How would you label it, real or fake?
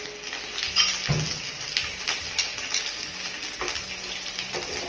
real